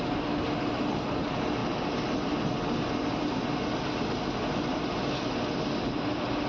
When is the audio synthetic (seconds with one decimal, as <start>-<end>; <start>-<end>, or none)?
none